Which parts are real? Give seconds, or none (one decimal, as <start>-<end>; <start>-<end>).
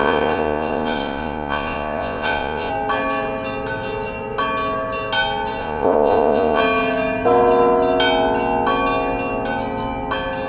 2.7-5.6; 6.6-10.5